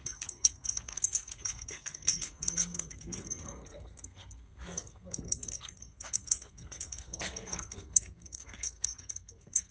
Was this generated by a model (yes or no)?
yes